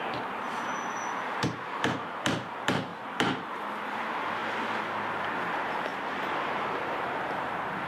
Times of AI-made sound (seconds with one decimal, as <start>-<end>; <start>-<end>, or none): 0.0-2.9; 3.9-4.4; 5.1-5.9; 6.5-7.9